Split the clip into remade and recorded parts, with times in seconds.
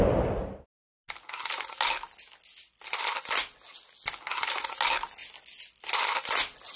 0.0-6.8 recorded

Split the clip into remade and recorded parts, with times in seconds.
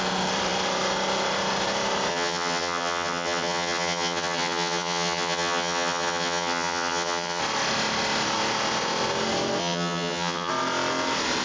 0.0-2.1 recorded; 2.1-7.4 remade; 7.4-9.6 recorded; 9.6-10.5 remade; 10.5-11.4 recorded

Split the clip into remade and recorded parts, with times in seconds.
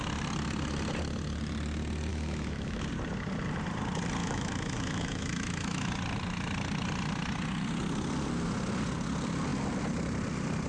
0.0-2.1 recorded; 2.1-2.9 remade; 2.9-4.2 recorded; 4.2-5.9 remade; 5.9-10.7 recorded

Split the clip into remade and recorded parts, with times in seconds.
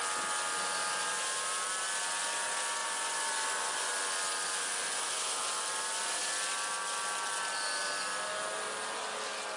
0.0-2.8 recorded; 2.8-3.9 remade; 3.9-9.6 recorded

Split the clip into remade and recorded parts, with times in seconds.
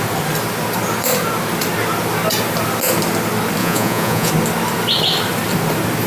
0.0-3.6 recorded; 3.6-4.3 remade; 4.3-6.1 recorded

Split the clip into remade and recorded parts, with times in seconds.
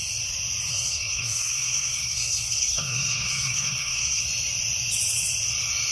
0.0-0.7 recorded; 0.7-4.2 remade; 4.2-5.9 recorded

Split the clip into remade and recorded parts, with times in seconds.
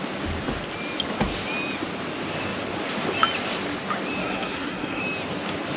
0.0-4.2 recorded; 4.2-5.0 remade; 5.0-5.8 recorded